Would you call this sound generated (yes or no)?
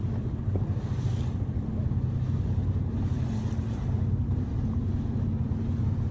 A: no